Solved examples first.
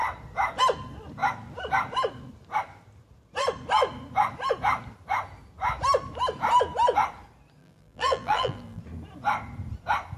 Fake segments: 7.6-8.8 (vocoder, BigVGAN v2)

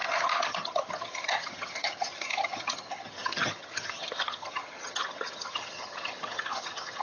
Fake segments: 0.0-7.0 (vocoder, HiFi-GAN)

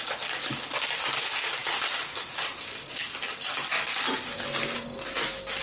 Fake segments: none

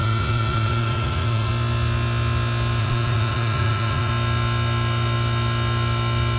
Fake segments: 0.0-1.5 (vocoder, Vocos); 2.8-4.1

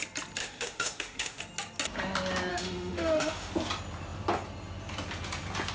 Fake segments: 0.4-1.4 (autoencoder, DAC-VAE); 2.5-3.5